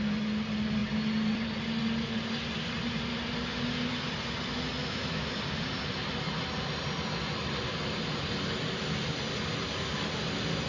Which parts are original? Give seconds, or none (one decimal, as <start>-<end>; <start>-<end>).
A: 0.0-4.8; 5.4-10.7